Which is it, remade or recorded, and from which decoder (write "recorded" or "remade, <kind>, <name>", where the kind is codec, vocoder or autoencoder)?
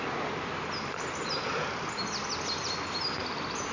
recorded